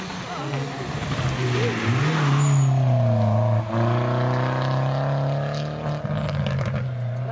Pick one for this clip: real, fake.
real